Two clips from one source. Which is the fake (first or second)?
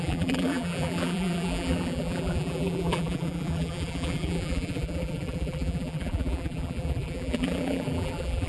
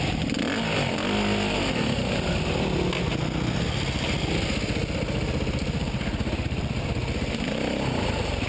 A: first